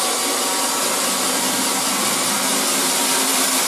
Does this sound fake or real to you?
real